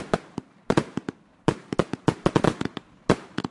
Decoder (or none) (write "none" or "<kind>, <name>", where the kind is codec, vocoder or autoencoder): vocoder, BigVGAN v2